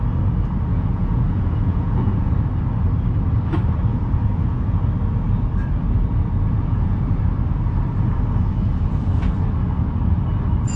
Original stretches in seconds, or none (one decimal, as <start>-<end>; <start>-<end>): 0.0-0.7; 2.3-3.9; 4.8-6.1; 7.2-10.8